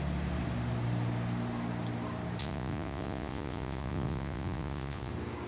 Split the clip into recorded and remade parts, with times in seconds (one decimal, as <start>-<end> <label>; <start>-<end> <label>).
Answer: 0.0-2.4 recorded; 2.4-5.1 remade; 5.1-5.5 recorded